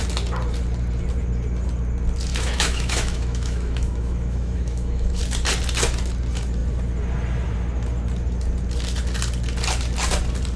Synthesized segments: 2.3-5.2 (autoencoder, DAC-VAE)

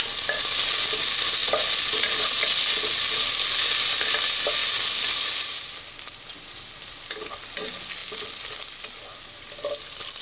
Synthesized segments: 4.6-7.3 (vocoder, BigVGAN v2); 8.0-9.7

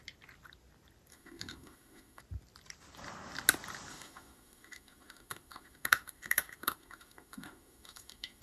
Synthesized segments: 1.1-2.2 (autoencoder, DAC-VAE); 3.9-8.4

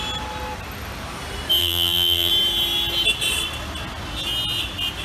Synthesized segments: 1.6-2.3 (vocoder, BigVGAN v2)

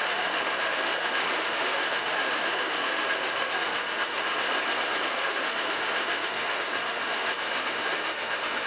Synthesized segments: 0.0-4.5 (autoencoder, DAC-VAE); 5.0-8.7

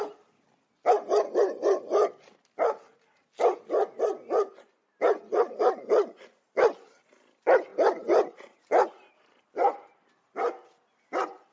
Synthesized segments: none

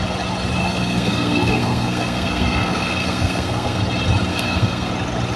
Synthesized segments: 0.6-3.8 (codec, SNAC); 4.3-4.9

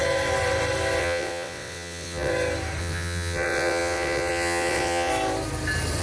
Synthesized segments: 1.0-2.3 (vocoder, WaveNeXt); 2.8-5.1